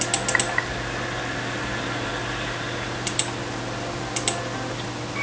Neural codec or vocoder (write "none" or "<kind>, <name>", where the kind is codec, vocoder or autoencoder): none